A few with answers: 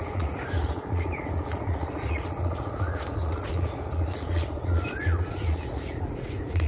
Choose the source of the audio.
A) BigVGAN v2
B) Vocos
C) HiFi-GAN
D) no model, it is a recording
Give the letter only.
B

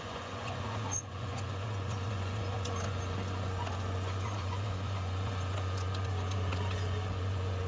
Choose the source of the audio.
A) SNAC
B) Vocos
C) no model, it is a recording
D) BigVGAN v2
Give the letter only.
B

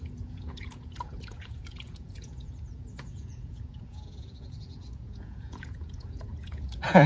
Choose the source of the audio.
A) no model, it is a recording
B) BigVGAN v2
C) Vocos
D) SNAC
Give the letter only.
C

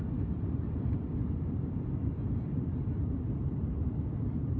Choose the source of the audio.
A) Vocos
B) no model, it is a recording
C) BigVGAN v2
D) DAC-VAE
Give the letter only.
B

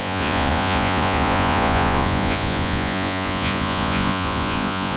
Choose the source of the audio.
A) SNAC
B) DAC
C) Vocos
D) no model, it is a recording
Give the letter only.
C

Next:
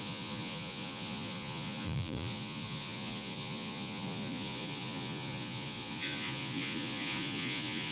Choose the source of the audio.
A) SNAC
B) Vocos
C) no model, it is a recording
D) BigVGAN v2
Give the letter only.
B